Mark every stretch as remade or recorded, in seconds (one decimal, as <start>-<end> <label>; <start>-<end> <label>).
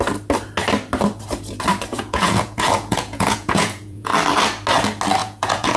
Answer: 0.0-1.9 recorded; 1.9-4.1 remade; 4.1-5.2 recorded; 5.2-5.8 remade